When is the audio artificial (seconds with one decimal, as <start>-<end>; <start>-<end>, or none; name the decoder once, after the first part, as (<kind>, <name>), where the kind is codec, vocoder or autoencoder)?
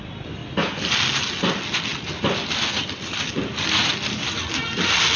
none